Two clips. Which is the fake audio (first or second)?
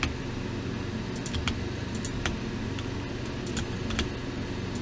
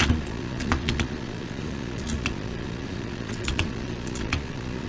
second